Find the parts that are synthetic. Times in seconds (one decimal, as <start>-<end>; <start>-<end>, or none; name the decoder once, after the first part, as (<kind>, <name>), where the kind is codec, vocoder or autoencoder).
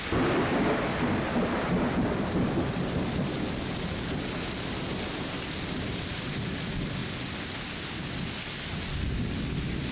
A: none